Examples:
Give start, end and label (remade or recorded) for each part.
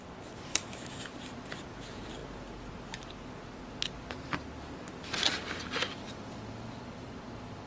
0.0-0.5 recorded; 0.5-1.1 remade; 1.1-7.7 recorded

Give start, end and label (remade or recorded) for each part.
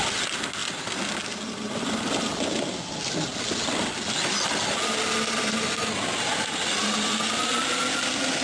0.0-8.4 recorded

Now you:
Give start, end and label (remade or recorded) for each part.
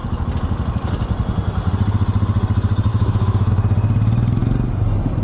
0.0-2.9 recorded; 2.9-3.5 remade; 3.5-5.2 recorded